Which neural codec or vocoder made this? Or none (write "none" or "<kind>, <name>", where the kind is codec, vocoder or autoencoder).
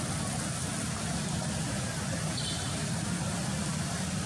none